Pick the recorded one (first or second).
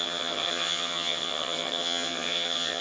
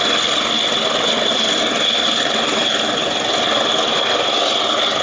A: second